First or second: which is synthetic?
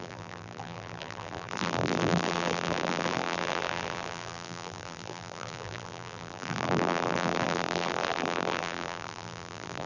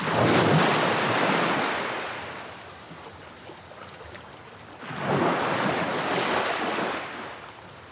first